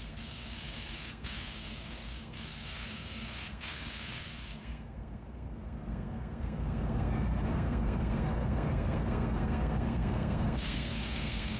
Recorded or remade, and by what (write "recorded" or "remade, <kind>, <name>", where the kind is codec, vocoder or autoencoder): remade, codec, SNAC